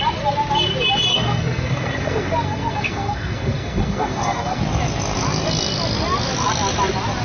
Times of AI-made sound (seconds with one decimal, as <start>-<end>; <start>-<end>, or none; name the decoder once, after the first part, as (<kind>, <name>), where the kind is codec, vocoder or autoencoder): 1.1-4.6 (codec, SNAC)